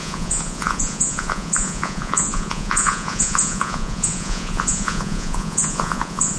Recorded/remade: remade